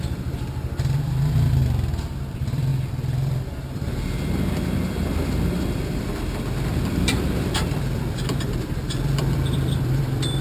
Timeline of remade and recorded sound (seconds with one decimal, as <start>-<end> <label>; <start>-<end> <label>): 0.0-1.6 remade; 1.6-2.2 recorded; 2.2-10.4 remade